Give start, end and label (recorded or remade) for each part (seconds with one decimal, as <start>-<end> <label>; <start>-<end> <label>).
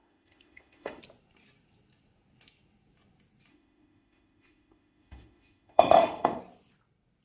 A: 0.0-1.0 remade; 1.0-3.5 recorded; 3.5-6.4 remade; 6.4-7.2 recorded